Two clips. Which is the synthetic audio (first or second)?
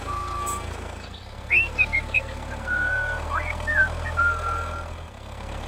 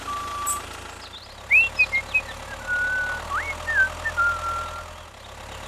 first